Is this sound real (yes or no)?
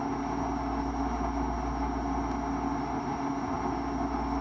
yes